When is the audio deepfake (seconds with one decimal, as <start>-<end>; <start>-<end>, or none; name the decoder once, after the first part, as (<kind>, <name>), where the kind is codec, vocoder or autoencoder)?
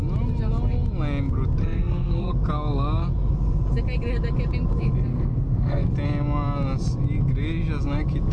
1.6-2.3 (codec, SNAC); 5.1-5.9